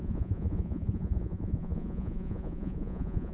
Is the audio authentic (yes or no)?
no